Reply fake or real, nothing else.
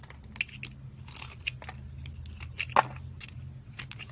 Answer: real